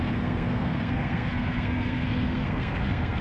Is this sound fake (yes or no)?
yes